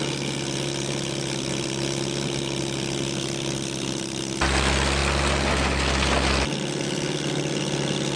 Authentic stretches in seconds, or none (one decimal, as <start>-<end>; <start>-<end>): 0.0-8.2